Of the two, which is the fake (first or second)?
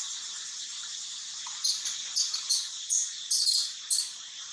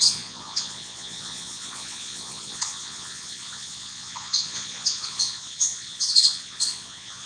second